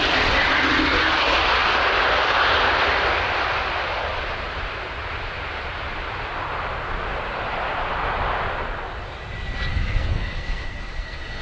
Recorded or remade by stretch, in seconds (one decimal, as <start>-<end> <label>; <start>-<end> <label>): 0.0-9.7 recorded; 9.7-11.4 remade